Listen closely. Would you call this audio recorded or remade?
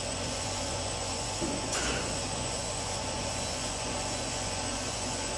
remade